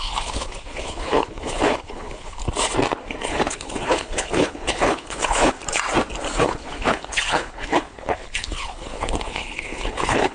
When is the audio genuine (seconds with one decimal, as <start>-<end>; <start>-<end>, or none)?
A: 2.4-3.3; 5.6-6.4